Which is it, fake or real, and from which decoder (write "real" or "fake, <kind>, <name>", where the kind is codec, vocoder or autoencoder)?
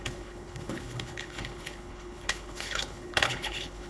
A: fake, codec, HILCodec